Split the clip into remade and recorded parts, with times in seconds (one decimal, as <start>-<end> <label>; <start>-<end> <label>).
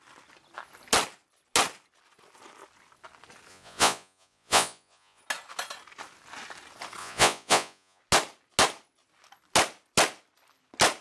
0.0-3.5 recorded; 3.5-5.2 remade; 5.2-7.0 recorded; 7.0-8.0 remade; 8.0-11.0 recorded